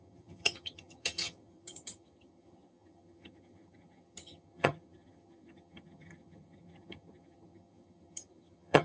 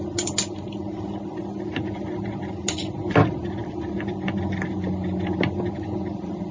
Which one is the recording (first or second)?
second